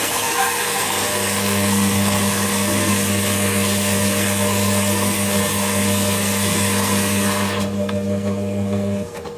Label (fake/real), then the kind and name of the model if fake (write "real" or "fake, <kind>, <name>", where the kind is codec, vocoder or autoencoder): fake, codec, SNAC